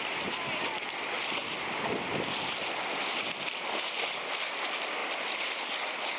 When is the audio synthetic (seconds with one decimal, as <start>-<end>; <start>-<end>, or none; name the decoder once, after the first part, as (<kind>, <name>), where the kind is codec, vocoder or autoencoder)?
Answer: 1.4-4.2 (vocoder, BigVGAN v2); 5.0-5.5